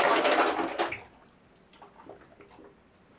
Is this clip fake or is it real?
real